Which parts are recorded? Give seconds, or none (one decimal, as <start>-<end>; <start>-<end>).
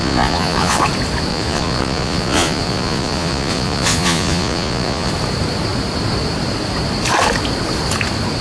0.8-1.3; 5.1-8.4